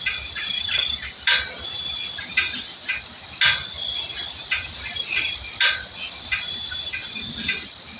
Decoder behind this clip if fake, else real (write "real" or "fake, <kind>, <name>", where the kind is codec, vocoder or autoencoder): real